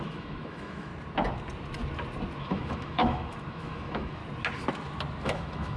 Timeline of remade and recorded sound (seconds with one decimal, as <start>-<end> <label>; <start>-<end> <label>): 0.0-0.9 remade; 0.9-2.4 recorded; 2.4-4.2 remade; 4.2-5.2 recorded; 5.2-5.8 remade